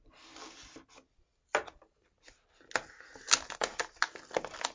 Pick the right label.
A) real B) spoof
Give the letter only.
A